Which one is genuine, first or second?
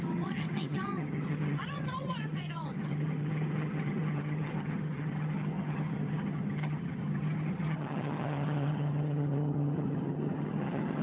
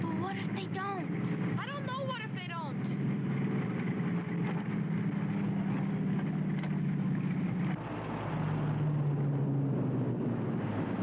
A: second